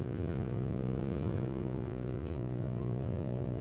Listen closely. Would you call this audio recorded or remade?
remade